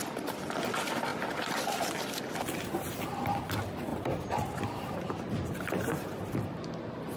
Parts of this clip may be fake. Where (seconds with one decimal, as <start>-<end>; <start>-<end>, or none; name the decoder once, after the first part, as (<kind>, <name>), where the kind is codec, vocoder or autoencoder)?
3.9-4.6 (vocoder, BigVGAN v2)